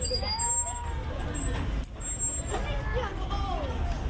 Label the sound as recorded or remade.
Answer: recorded